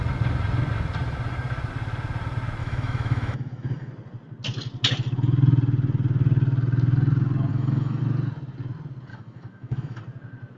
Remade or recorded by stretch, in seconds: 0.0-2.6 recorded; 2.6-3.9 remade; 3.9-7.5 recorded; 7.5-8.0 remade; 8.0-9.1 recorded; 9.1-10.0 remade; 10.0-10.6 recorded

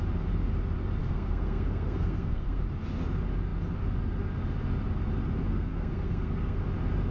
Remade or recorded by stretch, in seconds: 0.0-1.0 recorded; 1.0-2.6 remade; 2.6-5.5 recorded; 5.5-6.6 remade; 6.6-7.1 recorded

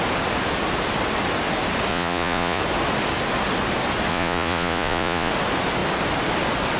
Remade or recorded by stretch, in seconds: 0.0-1.9 recorded; 1.9-2.6 remade; 2.6-4.1 recorded; 4.1-5.3 remade; 5.3-6.8 recorded

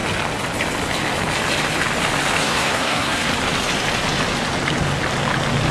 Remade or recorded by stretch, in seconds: 0.0-2.4 recorded; 2.4-3.3 remade; 3.3-5.7 recorded

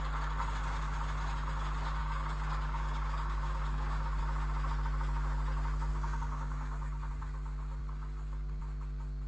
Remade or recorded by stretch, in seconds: 0.0-2.0 recorded; 2.0-4.2 remade; 4.2-5.9 recorded; 5.9-7.1 remade; 7.1-7.8 recorded; 7.8-8.6 remade; 8.6-9.3 recorded

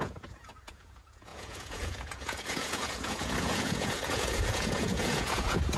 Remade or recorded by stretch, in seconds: 0.0-5.8 remade

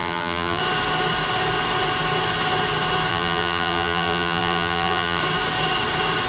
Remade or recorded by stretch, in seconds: 0.0-0.6 remade; 0.6-3.1 recorded; 3.1-5.2 remade; 5.2-6.3 recorded

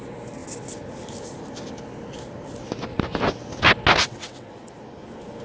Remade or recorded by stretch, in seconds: 0.0-4.0 recorded; 4.0-4.5 remade; 4.5-5.4 recorded